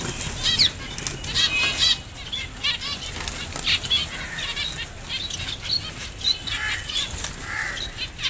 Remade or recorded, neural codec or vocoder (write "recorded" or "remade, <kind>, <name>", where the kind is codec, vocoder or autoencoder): recorded